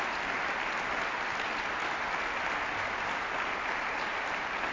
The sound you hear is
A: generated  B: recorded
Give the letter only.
B